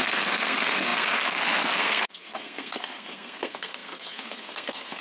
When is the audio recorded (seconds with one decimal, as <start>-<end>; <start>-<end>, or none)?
none